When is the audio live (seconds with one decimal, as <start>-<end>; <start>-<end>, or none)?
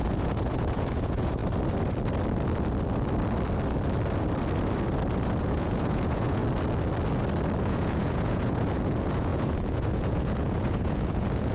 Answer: 1.4-5.4; 6.4-7.6